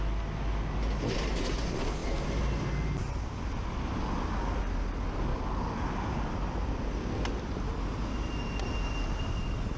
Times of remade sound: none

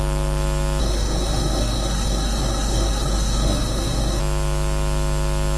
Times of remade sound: 0.8-4.2

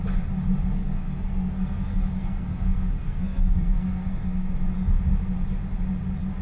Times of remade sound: 0.8-4.5

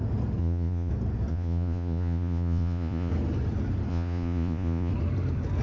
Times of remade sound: 0.4-0.9; 1.3-3.1; 3.9-4.9

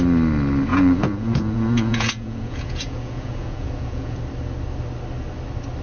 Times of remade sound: 0.7-4.2

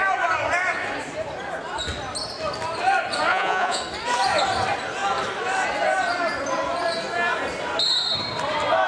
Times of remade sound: 3.3-3.8

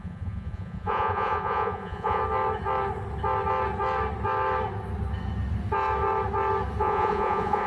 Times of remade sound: 0.0-2.2; 6.8-7.7